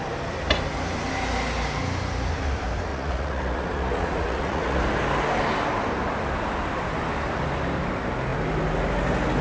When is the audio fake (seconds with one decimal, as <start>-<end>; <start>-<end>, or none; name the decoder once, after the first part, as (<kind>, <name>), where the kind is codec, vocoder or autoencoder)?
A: 2.9-4.8 (vocoder, Vocos)